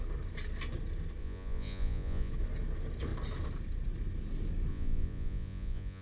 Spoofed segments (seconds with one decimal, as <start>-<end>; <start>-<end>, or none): 1.2-2.3; 4.7-6.0